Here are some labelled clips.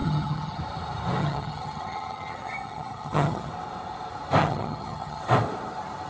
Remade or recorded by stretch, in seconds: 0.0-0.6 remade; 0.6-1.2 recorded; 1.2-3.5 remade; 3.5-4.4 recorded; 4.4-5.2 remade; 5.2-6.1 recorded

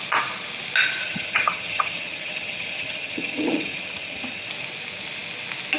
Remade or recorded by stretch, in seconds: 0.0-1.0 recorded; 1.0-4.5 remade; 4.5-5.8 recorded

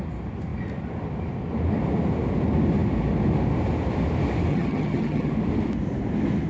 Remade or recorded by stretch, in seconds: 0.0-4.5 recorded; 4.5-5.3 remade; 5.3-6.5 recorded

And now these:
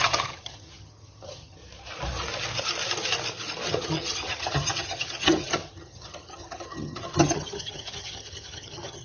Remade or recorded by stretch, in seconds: 0.0-1.6 remade; 1.6-3.7 recorded; 3.7-9.0 remade

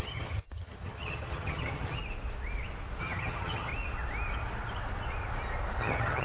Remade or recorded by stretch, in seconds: 0.0-2.0 remade; 2.0-3.0 recorded; 3.0-3.7 remade; 3.7-5.8 recorded; 5.8-6.2 remade

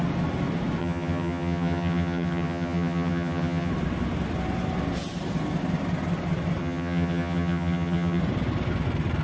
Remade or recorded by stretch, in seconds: 0.0-0.8 recorded; 0.8-3.7 remade; 3.7-6.6 recorded; 6.6-8.2 remade; 8.2-9.2 recorded

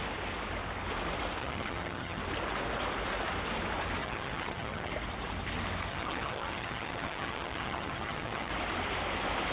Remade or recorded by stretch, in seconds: 0.0-1.4 recorded; 1.4-2.2 remade; 2.2-4.0 recorded; 4.0-4.9 remade; 4.9-5.9 recorded; 5.9-8.5 remade; 8.5-9.5 recorded